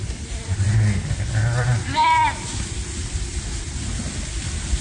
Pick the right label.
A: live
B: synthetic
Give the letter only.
A